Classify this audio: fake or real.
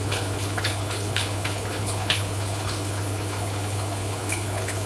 fake